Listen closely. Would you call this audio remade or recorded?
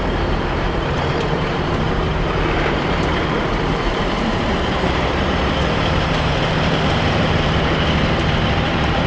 remade